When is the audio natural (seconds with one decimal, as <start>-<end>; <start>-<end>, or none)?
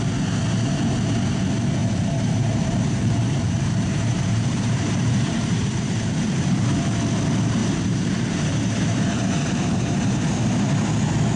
0.0-1.8; 6.7-7.6; 10.3-11.4